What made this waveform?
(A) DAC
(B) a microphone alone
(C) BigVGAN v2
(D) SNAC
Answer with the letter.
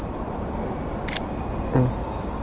B